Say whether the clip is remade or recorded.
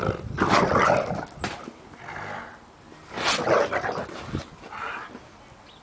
recorded